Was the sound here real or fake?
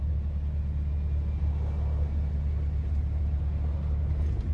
real